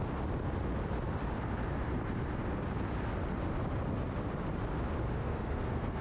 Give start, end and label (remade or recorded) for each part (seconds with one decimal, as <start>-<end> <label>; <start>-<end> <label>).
0.0-5.2 recorded; 5.2-6.0 remade